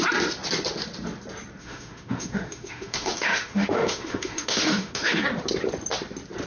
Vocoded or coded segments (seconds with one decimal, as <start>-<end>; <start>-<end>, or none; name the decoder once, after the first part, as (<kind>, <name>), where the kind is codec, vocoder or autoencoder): 1.6-5.2 (autoencoder, DAC-VAE)